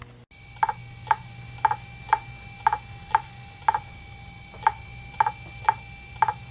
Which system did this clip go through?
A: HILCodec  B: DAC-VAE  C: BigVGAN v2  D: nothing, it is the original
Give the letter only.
D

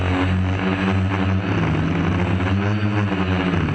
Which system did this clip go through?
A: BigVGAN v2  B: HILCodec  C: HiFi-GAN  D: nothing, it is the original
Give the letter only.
D